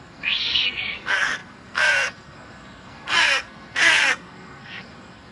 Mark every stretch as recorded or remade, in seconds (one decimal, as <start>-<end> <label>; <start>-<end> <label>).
0.0-5.3 remade